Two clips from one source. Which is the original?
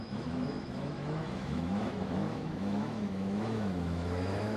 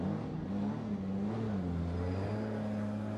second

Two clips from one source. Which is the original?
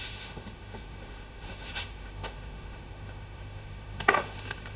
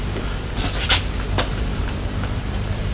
second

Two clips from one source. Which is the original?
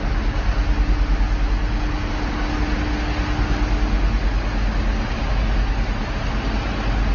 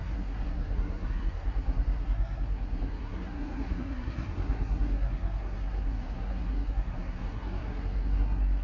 first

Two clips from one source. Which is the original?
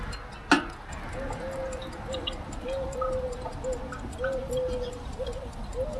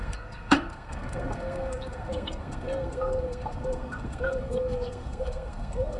first